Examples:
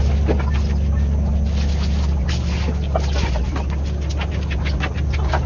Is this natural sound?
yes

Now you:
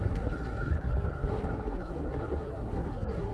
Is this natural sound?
no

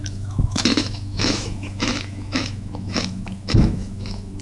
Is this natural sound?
no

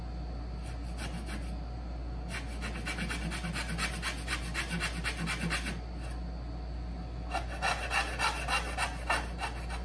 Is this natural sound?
yes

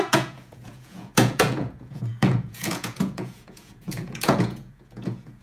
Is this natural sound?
no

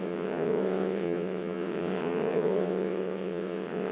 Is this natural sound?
no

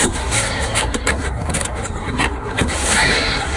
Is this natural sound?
no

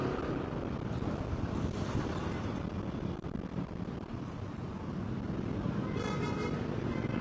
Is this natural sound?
yes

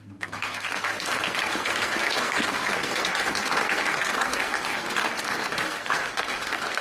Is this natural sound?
no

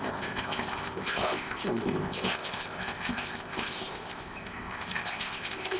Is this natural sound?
no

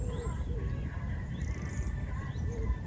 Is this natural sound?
no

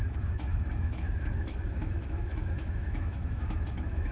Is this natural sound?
no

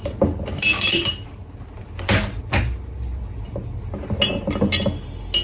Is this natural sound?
yes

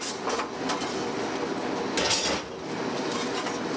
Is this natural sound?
yes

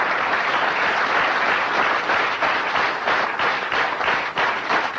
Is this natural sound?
yes